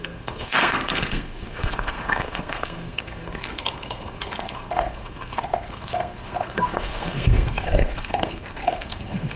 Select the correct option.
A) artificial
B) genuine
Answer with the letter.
A